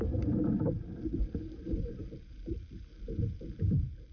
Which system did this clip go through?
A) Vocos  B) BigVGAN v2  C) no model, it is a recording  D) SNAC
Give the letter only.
B